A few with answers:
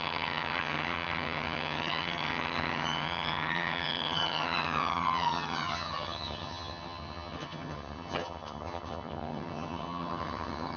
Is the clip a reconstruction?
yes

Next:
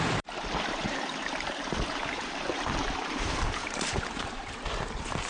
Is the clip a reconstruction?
yes